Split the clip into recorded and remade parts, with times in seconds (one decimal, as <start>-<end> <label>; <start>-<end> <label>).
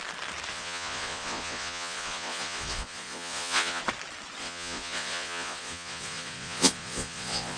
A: 0.0-0.5 recorded; 0.5-3.8 remade; 3.8-4.4 recorded; 4.4-7.6 remade